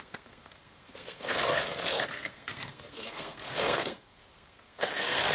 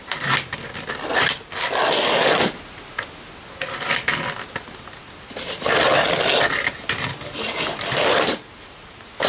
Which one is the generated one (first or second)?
first